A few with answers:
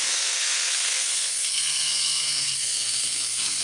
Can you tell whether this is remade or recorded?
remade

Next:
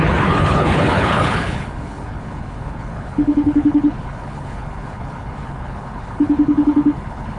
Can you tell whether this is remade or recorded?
remade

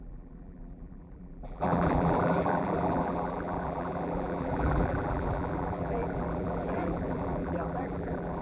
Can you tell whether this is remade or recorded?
remade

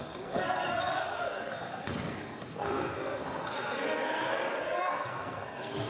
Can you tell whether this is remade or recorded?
remade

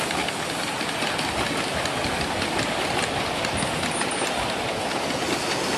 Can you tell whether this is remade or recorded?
recorded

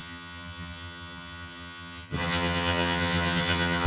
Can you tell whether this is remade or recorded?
remade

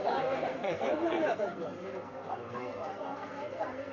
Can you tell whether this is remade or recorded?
remade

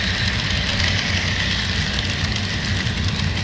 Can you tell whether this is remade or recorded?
recorded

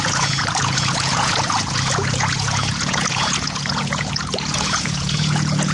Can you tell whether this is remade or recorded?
remade